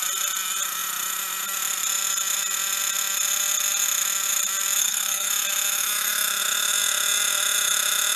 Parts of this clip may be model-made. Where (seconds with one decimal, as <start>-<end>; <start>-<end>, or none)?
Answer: 4.8-5.3